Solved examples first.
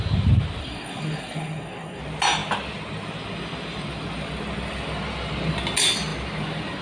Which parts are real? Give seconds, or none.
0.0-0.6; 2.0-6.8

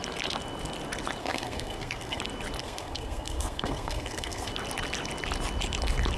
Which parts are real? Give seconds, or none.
0.0-1.2; 2.2-2.6; 4.5-6.2

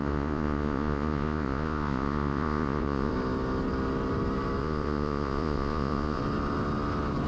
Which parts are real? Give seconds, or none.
3.1-4.6; 6.2-7.3

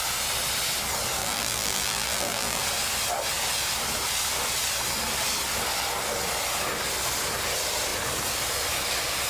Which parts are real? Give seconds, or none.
0.0-1.2; 2.6-9.3